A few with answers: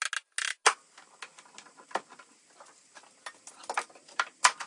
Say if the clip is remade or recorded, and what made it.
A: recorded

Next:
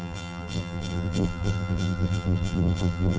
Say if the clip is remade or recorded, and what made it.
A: remade, vocoder, BigVGAN v2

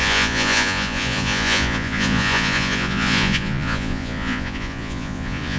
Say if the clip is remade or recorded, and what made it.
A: remade, vocoder, Vocos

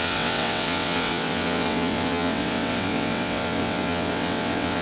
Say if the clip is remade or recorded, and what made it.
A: remade, vocoder, WaveNeXt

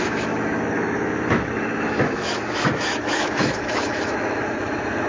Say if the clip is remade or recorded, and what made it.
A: remade, autoencoder, DAC-VAE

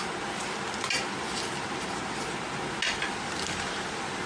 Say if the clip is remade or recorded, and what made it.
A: recorded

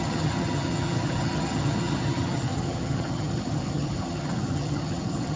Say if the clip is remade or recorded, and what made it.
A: remade, vocoder, HiFi-GAN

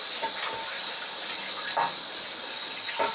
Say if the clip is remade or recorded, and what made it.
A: recorded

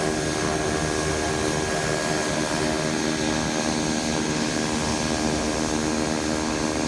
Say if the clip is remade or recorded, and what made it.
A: recorded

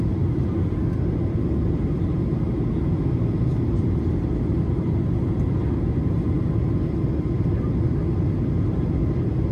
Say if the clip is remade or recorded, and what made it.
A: recorded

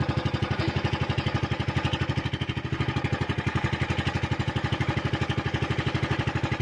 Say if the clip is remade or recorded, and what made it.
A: recorded